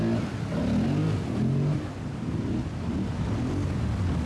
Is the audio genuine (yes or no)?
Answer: yes